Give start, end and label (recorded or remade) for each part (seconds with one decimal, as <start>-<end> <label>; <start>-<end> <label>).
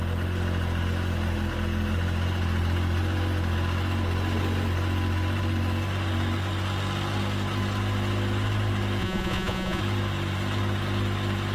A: 0.0-9.0 recorded; 9.0-9.8 remade; 9.8-11.5 recorded